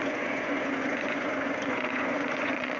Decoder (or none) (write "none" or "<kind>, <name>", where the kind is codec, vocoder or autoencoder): vocoder, Vocos